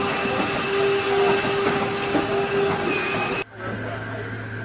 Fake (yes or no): no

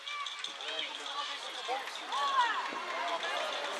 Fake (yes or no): no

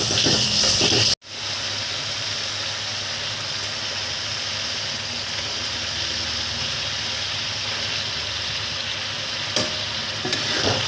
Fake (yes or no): no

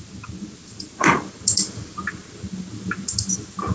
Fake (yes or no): no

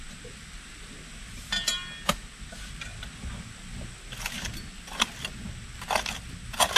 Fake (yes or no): no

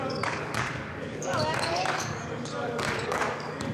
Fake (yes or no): yes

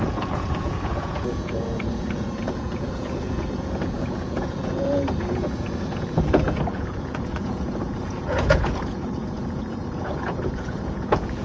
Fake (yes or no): yes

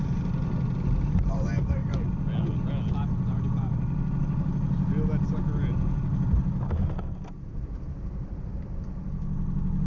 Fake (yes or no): no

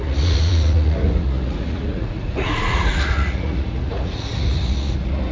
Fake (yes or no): yes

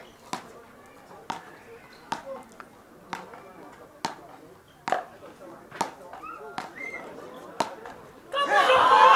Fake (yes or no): no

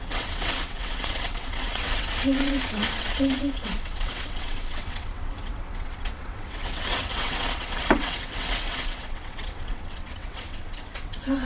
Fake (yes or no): yes